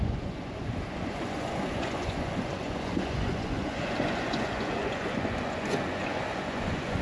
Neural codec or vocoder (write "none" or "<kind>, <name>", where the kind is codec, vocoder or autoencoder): vocoder, Vocos